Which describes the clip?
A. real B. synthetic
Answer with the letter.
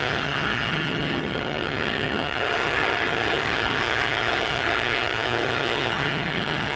B